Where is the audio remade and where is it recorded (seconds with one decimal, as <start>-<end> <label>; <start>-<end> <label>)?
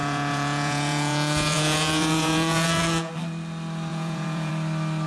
0.0-3.1 remade; 3.1-3.9 recorded; 3.9-4.5 remade; 4.5-5.1 recorded